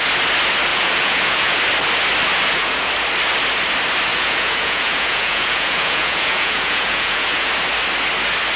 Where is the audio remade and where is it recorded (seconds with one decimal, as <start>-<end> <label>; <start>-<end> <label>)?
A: 0.0-0.7 recorded; 0.7-1.6 remade; 1.6-2.3 recorded; 2.3-2.9 remade; 2.9-4.1 recorded; 4.1-7.5 remade; 7.5-8.6 recorded

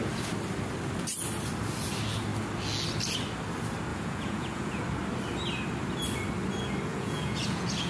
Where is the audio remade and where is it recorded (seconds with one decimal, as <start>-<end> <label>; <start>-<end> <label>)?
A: 0.0-3.9 recorded; 3.9-4.8 remade; 4.8-6.9 recorded; 6.9-7.9 remade

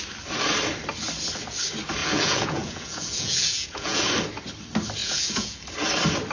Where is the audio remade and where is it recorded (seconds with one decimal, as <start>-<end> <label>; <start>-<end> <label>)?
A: 0.0-2.0 recorded; 2.0-4.0 remade; 4.0-5.0 recorded; 5.0-5.6 remade; 5.6-6.3 recorded

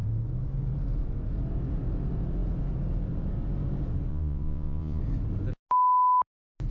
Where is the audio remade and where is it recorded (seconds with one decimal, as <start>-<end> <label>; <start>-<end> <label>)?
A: 0.0-4.1 recorded; 4.1-5.0 remade; 5.0-6.7 recorded

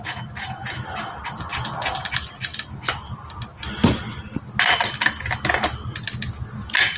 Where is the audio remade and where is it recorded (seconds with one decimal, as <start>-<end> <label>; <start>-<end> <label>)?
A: 0.0-7.0 recorded